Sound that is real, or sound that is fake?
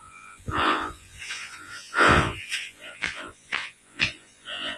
fake